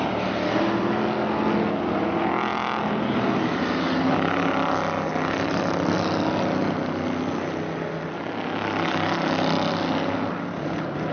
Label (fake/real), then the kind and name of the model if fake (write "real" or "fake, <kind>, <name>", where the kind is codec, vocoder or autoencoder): real